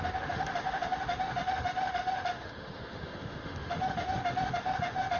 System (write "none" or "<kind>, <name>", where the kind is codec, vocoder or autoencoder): autoencoder, DAC-VAE